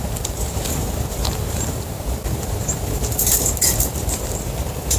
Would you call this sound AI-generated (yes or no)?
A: yes